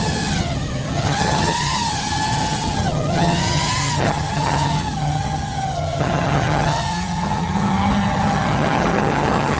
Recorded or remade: remade